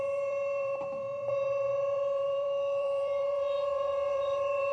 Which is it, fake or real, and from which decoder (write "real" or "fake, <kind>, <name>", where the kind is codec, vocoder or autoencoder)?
fake, vocoder, BigVGAN v2